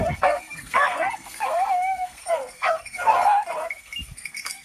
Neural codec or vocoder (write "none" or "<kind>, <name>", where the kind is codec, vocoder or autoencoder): codec, SNAC